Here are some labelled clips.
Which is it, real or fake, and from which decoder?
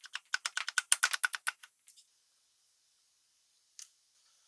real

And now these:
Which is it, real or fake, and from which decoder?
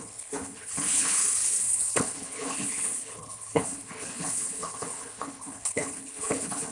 fake, codec, HILCodec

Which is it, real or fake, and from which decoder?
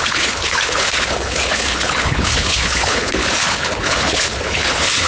fake, codec, HILCodec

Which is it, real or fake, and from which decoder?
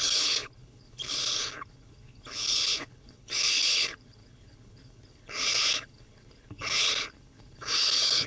fake, codec, HILCodec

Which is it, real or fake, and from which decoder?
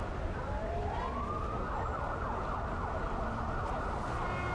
real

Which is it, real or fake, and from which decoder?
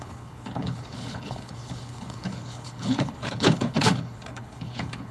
fake, codec, HILCodec